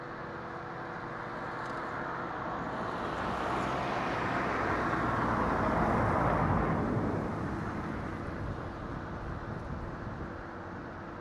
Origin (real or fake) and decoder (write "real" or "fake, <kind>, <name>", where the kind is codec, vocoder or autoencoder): real